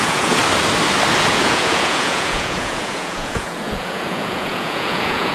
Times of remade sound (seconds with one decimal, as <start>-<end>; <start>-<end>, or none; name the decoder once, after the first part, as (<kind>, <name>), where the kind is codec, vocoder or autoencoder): 0.0-0.4 (vocoder, Vocos); 1.3-5.3